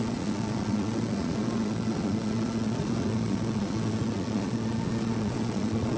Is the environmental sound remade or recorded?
remade